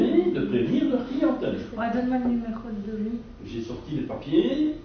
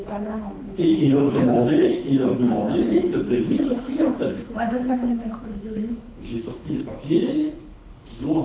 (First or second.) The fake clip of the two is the second